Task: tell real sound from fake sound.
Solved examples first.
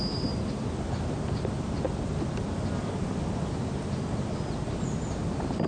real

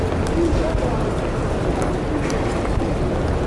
real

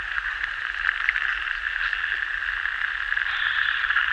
real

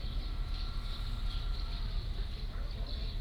real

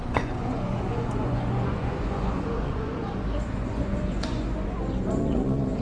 fake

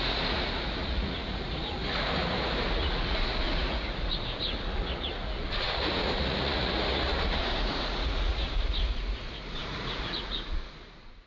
fake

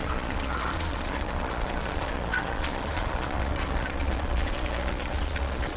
fake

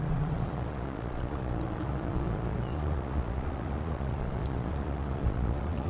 fake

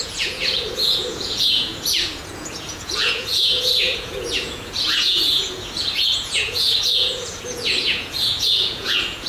fake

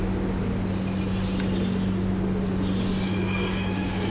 real